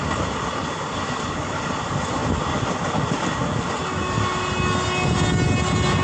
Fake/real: real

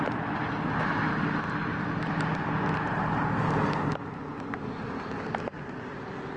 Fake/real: real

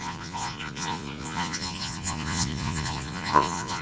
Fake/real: fake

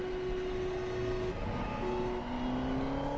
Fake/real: real